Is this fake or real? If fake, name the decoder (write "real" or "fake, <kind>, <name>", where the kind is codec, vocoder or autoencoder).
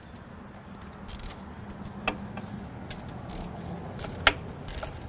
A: real